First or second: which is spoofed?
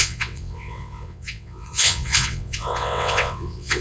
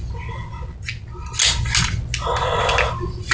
first